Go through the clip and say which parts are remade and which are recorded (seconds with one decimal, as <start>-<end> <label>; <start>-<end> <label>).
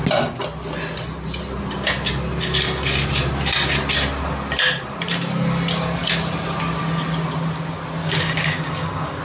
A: 0.0-8.0 recorded; 8.0-9.2 remade